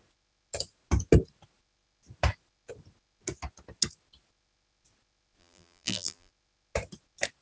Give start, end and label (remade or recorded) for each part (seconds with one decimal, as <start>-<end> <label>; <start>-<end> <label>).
0.0-5.4 recorded; 5.4-6.3 remade; 6.3-7.4 recorded